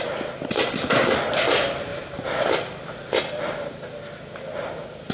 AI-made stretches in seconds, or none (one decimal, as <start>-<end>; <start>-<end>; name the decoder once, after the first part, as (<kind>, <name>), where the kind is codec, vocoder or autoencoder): none